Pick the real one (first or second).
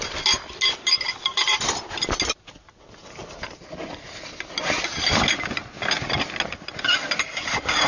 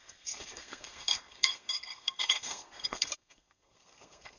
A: first